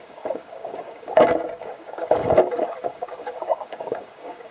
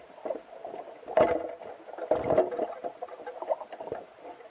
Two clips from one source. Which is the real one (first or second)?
second